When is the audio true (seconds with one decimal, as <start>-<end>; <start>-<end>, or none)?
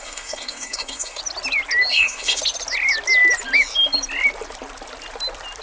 1.2-1.9; 2.4-5.6